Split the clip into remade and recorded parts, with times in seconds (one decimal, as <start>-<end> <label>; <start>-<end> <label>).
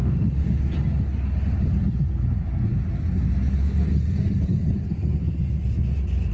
0.0-0.6 remade; 0.6-6.3 recorded